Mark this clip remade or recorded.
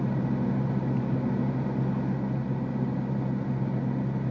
recorded